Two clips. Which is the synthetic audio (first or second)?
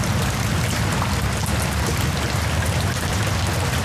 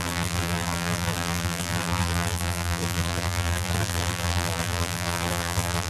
second